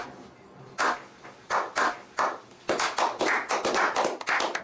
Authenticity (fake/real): real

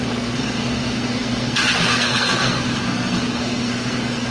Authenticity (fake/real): fake